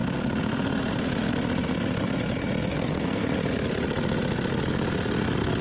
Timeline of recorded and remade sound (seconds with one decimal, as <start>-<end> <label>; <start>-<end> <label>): 0.0-2.7 recorded; 2.7-3.3 remade; 3.3-5.6 recorded